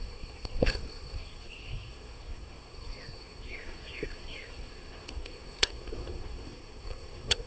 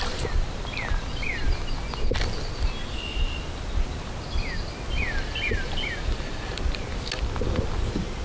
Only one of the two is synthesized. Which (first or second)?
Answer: first